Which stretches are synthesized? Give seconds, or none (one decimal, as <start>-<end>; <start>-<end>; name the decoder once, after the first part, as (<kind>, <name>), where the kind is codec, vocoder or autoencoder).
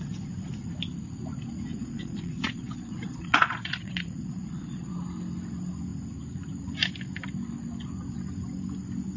1.7-4.9 (vocoder, Vocos)